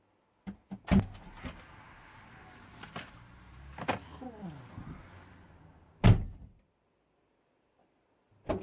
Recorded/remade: recorded